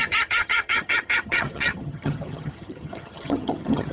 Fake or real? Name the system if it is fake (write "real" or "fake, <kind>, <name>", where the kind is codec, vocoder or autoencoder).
fake, vocoder, HiFi-GAN